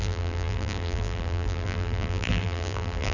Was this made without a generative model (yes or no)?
no